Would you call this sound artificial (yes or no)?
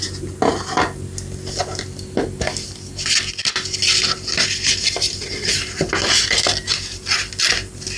no